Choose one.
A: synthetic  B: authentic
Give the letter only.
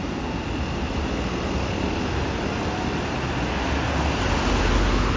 B